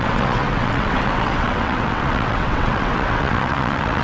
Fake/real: fake